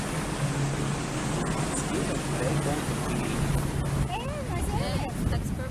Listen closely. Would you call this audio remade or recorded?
recorded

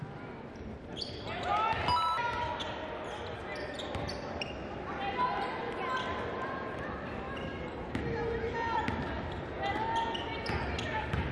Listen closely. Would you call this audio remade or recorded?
recorded